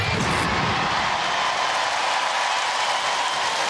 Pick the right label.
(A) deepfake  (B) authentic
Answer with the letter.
B